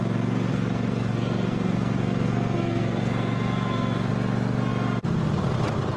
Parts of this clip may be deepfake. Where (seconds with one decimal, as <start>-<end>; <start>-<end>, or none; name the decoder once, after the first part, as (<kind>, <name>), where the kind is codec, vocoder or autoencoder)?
0.5-4.1 (codec, SNAC)